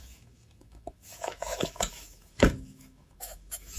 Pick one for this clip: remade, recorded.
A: remade